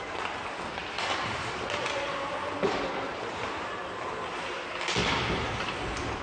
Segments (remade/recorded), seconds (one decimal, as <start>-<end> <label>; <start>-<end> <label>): 0.0-6.2 recorded